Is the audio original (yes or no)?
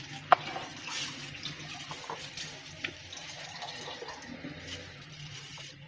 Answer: yes